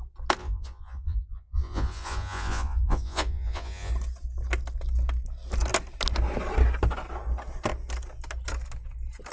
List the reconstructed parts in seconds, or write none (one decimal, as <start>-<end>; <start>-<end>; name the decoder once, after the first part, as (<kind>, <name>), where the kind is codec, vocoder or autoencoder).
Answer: 0.4-3.9 (vocoder, Vocos)